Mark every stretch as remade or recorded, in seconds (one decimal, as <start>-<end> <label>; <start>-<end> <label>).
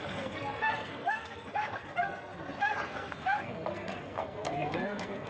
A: 0.0-5.3 remade